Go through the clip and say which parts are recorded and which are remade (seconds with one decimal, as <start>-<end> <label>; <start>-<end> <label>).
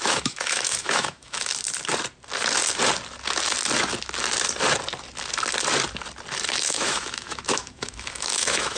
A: 0.0-1.5 remade; 1.5-6.5 recorded; 6.5-8.8 remade